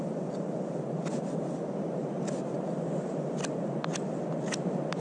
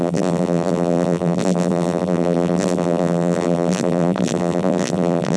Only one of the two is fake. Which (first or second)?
second